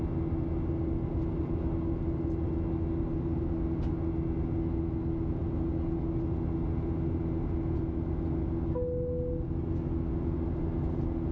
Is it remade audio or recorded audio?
recorded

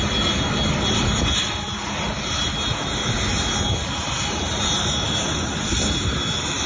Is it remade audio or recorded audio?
recorded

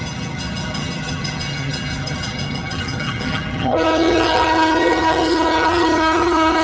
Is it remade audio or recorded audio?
remade